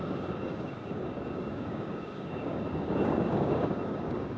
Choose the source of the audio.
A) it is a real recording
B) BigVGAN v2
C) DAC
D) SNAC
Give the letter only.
C